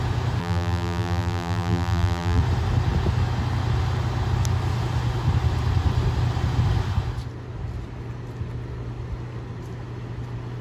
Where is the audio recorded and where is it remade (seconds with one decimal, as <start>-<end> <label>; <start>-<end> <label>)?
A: 0.0-0.4 recorded; 0.4-2.4 remade; 2.4-10.6 recorded